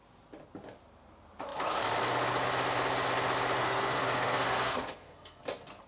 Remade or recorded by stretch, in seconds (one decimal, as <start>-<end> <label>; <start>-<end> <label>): 0.0-3.6 recorded; 3.6-5.4 remade; 5.4-5.9 recorded